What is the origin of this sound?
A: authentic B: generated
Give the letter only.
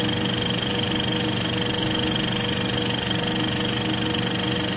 A